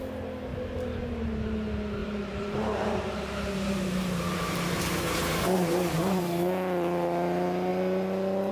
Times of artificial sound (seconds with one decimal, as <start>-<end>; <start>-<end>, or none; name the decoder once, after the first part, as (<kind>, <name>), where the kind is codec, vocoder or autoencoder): 0.5-1.2 (vocoder, BigVGAN v2); 2.0-6.2